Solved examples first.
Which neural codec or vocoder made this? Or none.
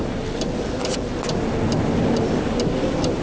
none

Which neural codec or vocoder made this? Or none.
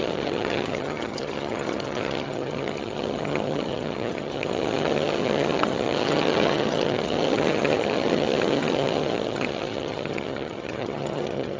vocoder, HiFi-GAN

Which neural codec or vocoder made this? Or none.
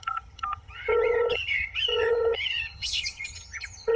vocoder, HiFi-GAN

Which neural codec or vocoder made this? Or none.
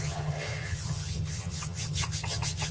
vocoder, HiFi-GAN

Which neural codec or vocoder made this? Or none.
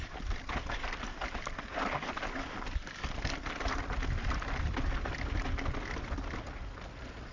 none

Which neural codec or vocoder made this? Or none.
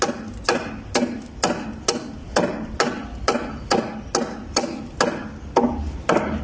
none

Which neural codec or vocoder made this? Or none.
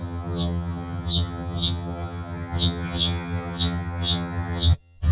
vocoder, HiFi-GAN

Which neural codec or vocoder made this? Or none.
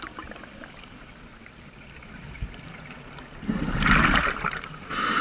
none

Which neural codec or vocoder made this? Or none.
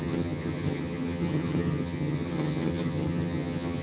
vocoder, HiFi-GAN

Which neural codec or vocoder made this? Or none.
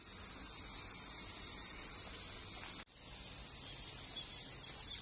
none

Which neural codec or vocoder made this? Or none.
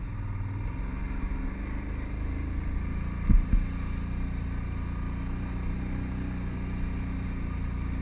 none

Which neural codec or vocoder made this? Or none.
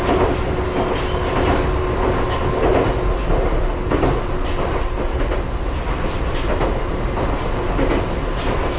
none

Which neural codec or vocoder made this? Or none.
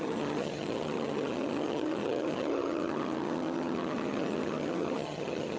vocoder, HiFi-GAN